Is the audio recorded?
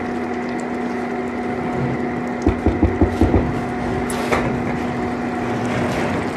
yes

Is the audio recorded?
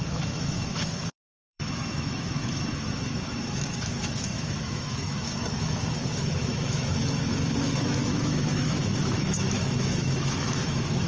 no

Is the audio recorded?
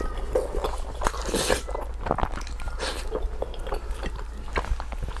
yes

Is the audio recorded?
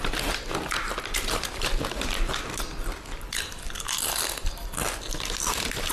yes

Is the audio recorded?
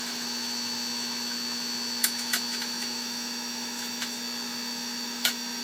no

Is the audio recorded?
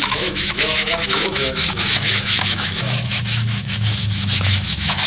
no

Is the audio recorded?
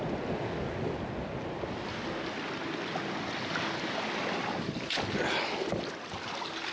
yes